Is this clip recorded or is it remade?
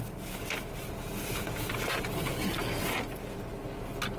recorded